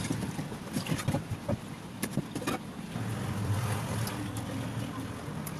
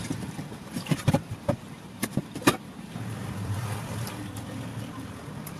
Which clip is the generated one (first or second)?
second